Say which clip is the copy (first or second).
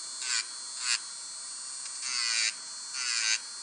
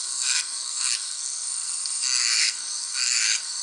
second